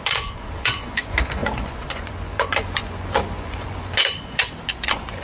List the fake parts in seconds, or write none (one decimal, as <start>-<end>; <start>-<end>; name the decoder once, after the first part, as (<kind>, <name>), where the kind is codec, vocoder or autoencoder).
0.0-5.2 (vocoder, Vocos)